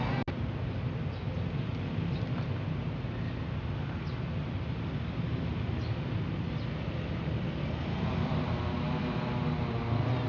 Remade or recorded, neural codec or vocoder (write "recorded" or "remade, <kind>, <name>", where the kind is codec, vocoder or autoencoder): recorded